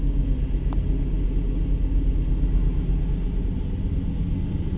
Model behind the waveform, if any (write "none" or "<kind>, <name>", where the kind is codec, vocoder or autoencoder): none